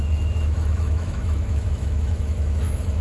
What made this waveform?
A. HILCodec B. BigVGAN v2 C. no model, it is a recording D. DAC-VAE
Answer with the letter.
D